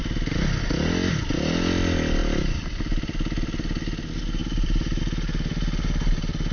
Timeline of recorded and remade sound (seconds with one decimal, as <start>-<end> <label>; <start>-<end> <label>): 0.0-2.2 recorded; 2.2-2.8 remade; 2.8-4.4 recorded; 4.4-5.0 remade; 5.0-6.5 recorded